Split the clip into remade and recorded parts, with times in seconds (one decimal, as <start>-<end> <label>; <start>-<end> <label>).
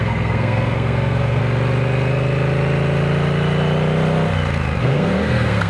0.0-1.4 remade; 1.4-4.8 recorded; 4.8-5.7 remade